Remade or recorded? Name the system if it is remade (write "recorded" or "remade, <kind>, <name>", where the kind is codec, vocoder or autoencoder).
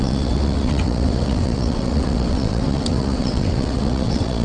remade, vocoder, WaveNeXt